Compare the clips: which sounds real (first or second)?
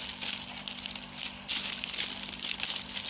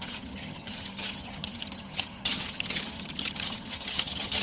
first